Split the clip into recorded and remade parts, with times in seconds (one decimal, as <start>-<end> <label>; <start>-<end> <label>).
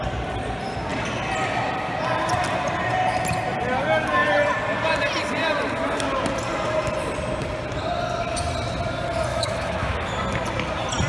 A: 0.0-9.3 recorded; 9.3-10.1 remade; 10.1-11.1 recorded